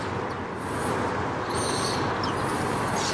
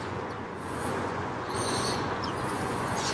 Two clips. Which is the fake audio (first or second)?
second